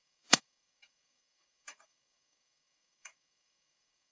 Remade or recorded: remade